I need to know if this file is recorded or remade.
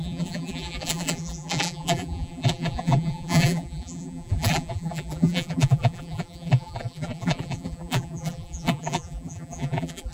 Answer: remade